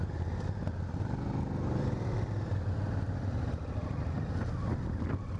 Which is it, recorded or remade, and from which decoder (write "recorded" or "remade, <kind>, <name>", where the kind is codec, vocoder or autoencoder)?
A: recorded